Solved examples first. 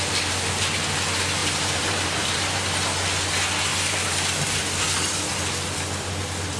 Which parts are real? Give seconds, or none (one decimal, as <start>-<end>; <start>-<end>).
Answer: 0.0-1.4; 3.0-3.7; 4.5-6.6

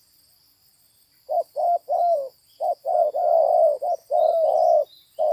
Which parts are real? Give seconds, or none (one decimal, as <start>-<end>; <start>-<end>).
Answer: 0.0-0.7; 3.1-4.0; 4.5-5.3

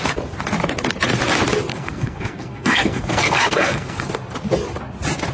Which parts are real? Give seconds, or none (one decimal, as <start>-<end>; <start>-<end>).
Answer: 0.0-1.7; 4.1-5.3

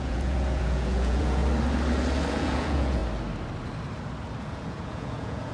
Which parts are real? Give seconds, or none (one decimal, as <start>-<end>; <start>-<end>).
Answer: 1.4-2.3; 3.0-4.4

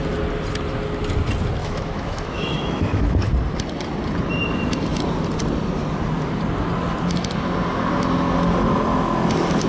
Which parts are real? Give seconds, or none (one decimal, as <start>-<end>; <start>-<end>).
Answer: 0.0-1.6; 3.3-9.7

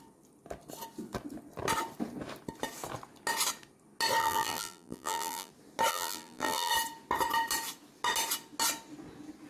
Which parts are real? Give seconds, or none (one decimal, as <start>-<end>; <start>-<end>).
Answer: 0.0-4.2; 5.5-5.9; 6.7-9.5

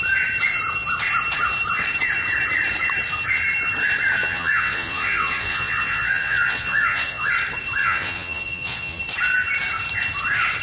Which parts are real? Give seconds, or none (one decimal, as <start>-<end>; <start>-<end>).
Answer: 0.0-4.2; 7.3-7.8; 9.0-10.6

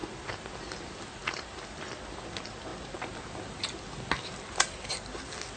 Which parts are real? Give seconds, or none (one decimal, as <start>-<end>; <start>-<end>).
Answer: 0.0-5.6